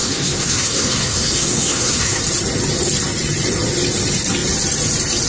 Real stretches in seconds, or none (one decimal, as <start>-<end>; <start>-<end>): 2.2-5.3